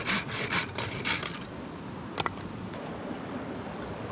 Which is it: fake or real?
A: real